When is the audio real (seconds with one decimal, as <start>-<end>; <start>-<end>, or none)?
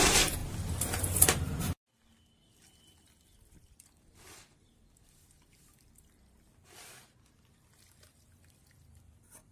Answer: 0.4-1.6